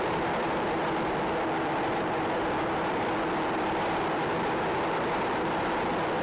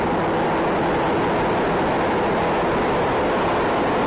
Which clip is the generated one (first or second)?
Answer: first